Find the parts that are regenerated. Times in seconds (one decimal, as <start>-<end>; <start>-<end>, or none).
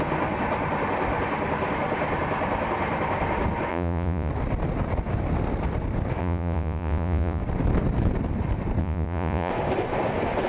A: 3.7-4.3; 6.2-7.4; 8.8-9.5